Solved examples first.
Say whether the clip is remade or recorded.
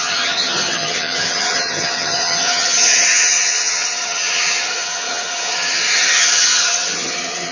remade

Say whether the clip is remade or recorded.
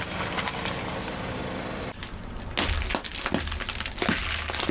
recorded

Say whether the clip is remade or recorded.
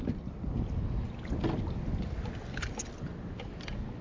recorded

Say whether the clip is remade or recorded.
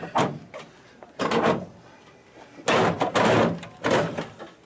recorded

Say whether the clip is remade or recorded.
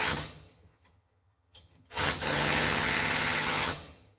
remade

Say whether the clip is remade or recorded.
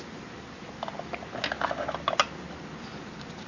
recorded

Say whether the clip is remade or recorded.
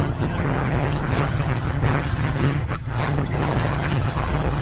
remade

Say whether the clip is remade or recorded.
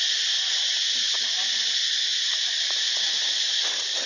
recorded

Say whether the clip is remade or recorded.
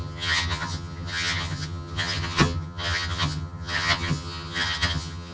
remade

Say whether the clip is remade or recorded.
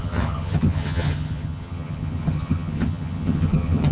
remade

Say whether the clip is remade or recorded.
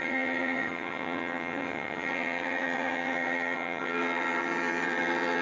remade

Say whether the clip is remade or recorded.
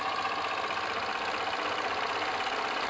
recorded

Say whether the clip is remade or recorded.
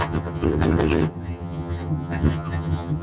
remade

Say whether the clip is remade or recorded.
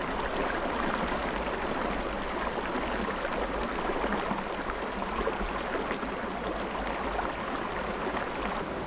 recorded